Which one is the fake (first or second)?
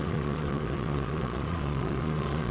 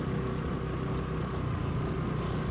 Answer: first